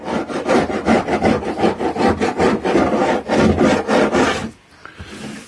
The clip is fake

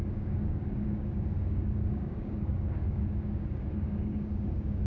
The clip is fake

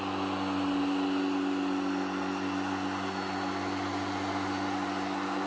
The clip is real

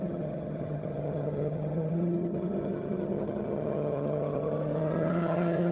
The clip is fake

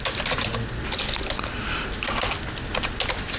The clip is real